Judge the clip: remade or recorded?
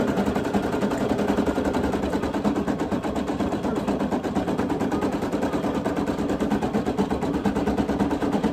recorded